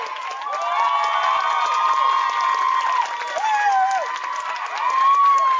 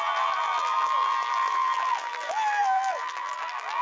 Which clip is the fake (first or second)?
second